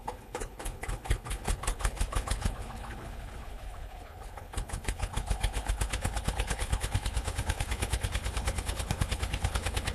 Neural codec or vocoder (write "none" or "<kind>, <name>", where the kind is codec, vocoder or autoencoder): codec, HILCodec